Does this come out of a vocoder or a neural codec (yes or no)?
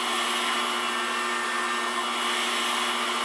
no